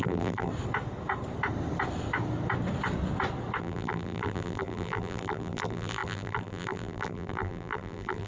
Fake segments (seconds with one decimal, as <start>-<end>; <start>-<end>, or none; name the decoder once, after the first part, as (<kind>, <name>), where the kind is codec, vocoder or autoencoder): 0.0-0.5 (vocoder, BigVGAN v2); 3.6-8.3